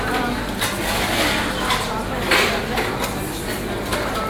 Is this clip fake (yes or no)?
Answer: no